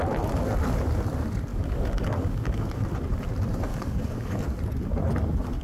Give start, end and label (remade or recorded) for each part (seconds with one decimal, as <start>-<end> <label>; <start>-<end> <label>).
0.0-1.5 recorded; 1.5-2.7 remade; 2.7-3.7 recorded; 3.7-4.4 remade; 4.4-5.6 recorded